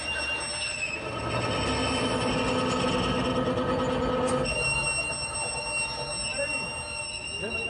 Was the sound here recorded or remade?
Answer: recorded